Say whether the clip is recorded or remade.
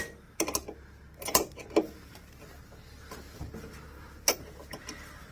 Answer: recorded